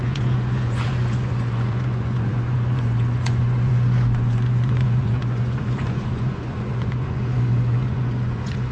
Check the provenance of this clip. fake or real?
fake